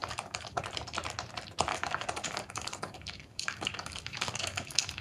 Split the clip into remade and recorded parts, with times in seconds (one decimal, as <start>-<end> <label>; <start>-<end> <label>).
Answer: 0.0-0.6 remade; 0.6-1.7 recorded; 1.7-5.0 remade